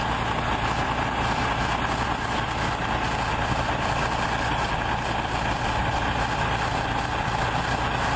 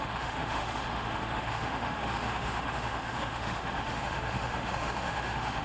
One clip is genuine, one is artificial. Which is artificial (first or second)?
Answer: second